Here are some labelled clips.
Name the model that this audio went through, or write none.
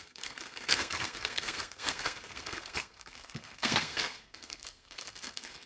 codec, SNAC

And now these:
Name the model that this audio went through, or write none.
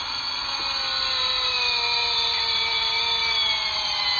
none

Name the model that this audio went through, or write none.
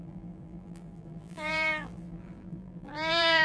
vocoder, BigVGAN v2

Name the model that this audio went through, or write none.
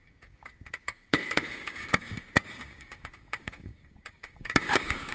codec, DAC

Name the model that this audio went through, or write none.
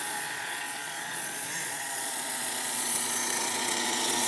vocoder, Vocos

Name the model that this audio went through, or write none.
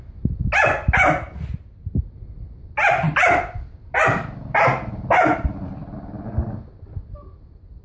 none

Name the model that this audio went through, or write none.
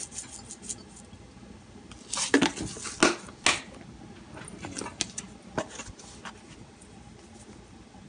none